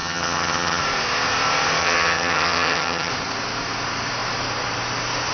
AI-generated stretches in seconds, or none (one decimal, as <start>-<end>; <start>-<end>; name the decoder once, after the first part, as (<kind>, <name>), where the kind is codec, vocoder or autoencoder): 0.0-0.8 (vocoder, HiFi-GAN); 1.8-3.1